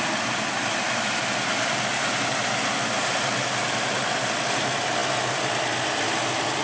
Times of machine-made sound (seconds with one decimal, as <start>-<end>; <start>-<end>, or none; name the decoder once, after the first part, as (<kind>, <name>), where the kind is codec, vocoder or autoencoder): none